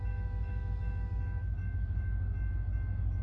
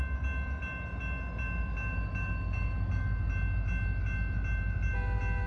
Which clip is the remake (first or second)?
first